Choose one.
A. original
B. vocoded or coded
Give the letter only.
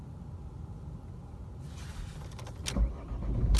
A